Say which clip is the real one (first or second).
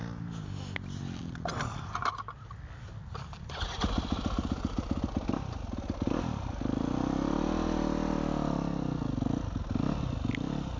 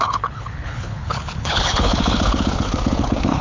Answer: first